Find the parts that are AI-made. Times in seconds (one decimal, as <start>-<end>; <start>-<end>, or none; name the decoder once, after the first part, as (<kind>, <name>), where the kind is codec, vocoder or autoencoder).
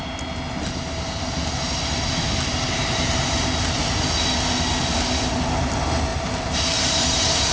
6.1-7.5 (vocoder, BigVGAN v2)